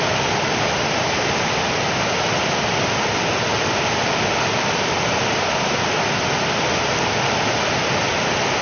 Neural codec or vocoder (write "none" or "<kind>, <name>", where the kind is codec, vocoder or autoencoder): none